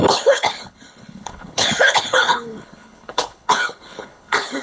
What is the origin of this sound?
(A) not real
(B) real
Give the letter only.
A